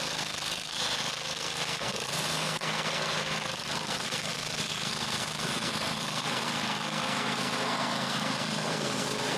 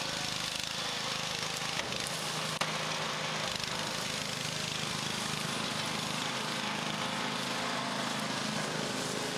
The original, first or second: second